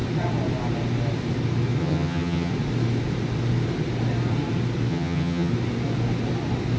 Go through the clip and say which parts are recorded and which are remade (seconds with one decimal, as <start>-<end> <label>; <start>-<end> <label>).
0.0-1.8 recorded; 1.8-2.5 remade; 2.5-4.9 recorded; 4.9-5.5 remade; 5.5-6.8 recorded